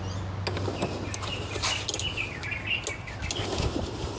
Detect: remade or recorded recorded